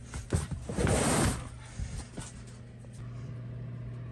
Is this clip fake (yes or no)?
no